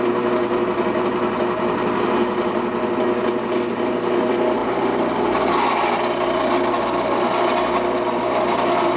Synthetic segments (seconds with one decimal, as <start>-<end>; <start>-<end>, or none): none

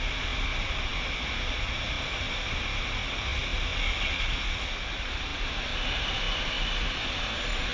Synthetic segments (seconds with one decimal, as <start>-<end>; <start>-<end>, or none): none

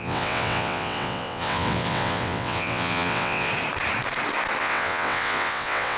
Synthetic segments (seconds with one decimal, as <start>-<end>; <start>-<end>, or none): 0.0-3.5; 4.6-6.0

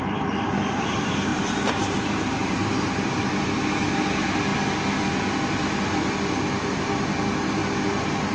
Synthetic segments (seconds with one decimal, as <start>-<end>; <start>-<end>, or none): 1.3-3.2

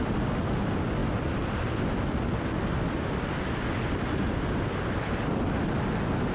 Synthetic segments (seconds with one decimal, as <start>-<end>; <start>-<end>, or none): none